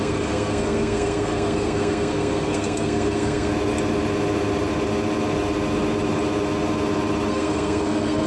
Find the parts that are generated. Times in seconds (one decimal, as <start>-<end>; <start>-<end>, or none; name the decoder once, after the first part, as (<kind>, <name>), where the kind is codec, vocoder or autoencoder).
0.0-3.5 (codec, SNAC); 7.3-8.3